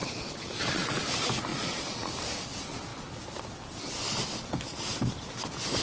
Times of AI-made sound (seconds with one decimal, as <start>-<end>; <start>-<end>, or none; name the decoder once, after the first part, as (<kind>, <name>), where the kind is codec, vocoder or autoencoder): 0.0-1.0 (vocoder, Vocos); 1.5-2.1